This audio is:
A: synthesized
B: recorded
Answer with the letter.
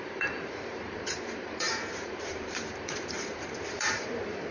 A